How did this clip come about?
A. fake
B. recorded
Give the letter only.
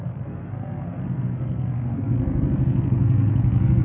A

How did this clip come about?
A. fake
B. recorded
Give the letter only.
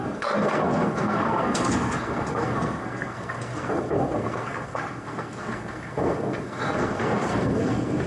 A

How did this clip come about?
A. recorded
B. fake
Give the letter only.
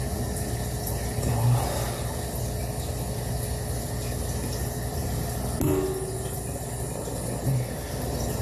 A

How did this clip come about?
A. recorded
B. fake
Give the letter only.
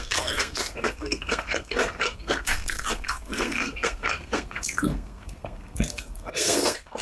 B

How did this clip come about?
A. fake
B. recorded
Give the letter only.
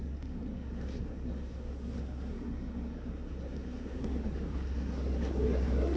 A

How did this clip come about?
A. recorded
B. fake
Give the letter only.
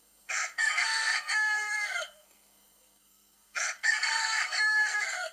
B